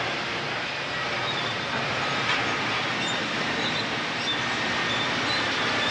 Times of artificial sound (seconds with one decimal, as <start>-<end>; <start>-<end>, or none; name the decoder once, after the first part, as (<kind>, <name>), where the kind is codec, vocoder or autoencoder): 1.2-2.7 (vocoder, BigVGAN v2); 3.2-3.8